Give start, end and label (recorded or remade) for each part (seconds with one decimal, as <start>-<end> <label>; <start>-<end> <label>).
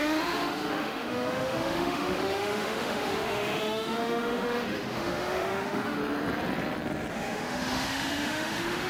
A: 0.0-6.0 remade; 6.0-7.1 recorded; 7.1-8.9 remade